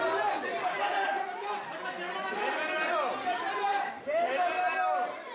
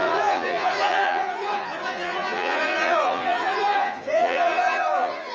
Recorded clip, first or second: first